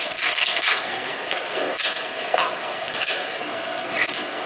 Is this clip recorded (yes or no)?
no